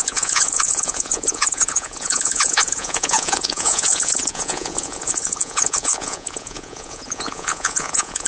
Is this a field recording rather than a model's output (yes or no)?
no